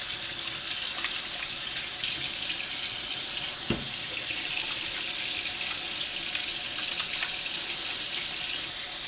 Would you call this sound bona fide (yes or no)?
yes